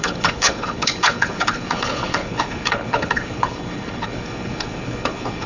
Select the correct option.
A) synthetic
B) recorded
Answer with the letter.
A